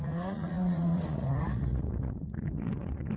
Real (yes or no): no